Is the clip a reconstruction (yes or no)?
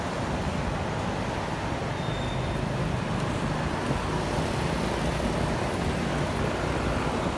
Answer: no